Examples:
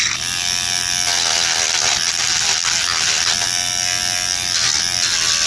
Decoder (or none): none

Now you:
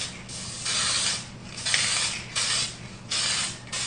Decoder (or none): none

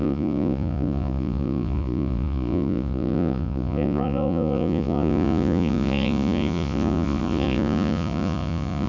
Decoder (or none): vocoder, Vocos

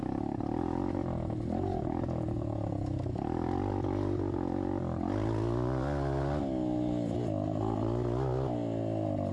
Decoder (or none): none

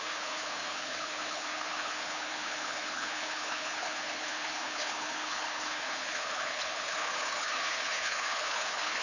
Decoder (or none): codec, HILCodec